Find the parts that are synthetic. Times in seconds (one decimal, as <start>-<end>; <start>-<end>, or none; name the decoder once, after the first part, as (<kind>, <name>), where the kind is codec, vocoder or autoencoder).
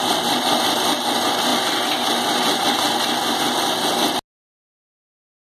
0.0-1.5 (vocoder, BigVGAN v2); 4.9-5.6